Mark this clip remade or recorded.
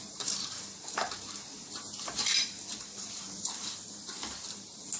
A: remade